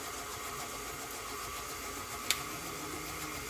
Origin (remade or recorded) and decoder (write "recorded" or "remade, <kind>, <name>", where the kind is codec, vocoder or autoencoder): recorded